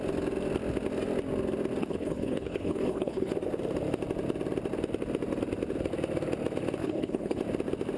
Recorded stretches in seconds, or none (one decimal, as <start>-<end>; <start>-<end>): 0.0-1.8; 3.3-6.8; 7.4-8.0